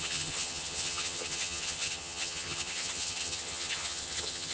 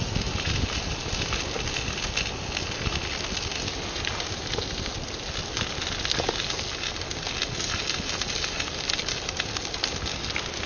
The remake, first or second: first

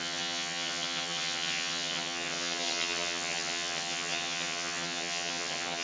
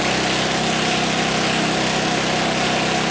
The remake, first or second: first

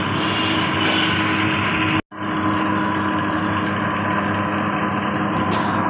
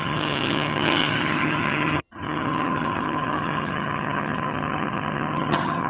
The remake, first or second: second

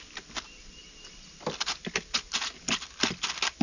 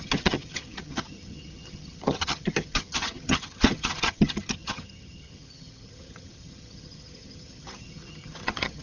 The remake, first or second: second